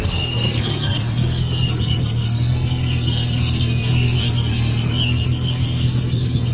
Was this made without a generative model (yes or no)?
no